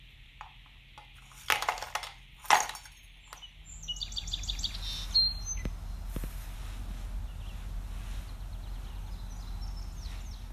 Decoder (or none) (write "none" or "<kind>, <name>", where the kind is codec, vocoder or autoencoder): none